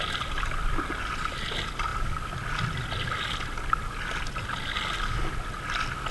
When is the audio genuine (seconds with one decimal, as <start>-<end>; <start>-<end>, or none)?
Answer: 0.0-6.1